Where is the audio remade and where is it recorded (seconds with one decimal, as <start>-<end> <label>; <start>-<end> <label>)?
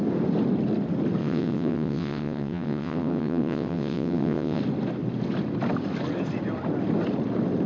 0.0-1.2 recorded; 1.2-4.6 remade; 4.6-7.7 recorded